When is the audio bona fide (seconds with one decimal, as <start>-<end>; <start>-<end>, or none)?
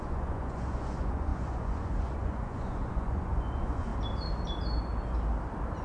3.9-5.8